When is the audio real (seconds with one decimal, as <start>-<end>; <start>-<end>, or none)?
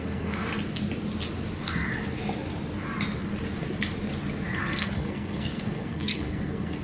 0.5-4.6